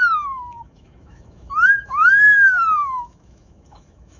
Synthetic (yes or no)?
yes